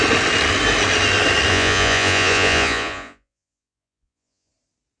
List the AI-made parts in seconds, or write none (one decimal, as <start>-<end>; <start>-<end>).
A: 1.5-4.5